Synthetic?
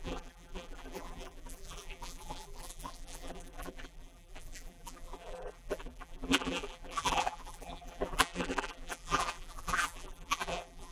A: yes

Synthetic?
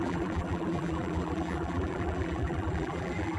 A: yes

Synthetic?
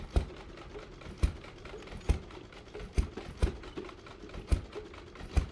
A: yes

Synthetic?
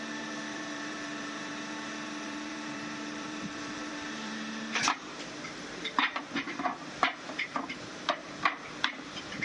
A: yes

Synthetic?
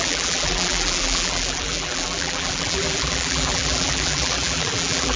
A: yes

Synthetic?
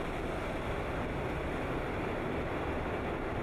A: no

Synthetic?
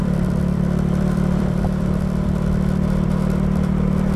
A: yes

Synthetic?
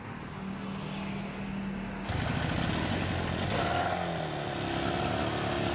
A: no